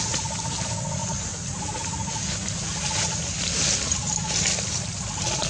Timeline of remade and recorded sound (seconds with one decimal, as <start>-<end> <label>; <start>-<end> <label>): 0.0-5.5 recorded